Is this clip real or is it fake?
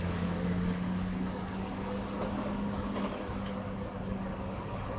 fake